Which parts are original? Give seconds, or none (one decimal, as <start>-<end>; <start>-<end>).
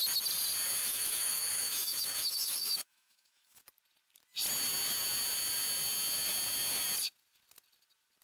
0.0-0.8; 3.6-8.2